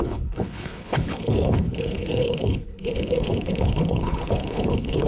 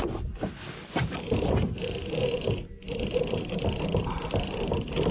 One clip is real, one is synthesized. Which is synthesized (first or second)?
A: first